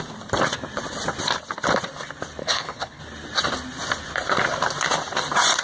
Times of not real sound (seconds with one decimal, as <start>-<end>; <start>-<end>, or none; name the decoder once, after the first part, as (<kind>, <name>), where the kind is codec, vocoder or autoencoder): 2.4-3.0 (codec, HILCodec)